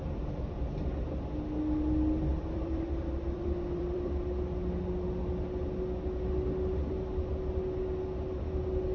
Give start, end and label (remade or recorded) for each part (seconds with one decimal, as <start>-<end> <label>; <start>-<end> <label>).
0.0-2.3 recorded; 2.3-4.2 remade; 4.2-8.9 recorded